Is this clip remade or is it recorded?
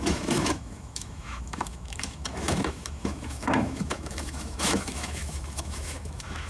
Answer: remade